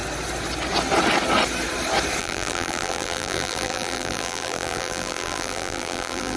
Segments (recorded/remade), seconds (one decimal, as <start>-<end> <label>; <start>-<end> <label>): 0.0-2.2 recorded; 2.2-6.4 remade